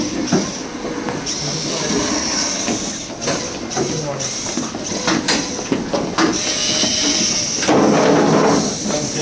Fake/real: real